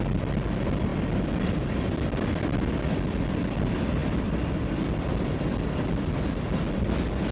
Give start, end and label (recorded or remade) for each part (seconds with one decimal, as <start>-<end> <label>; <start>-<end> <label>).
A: 0.0-7.3 recorded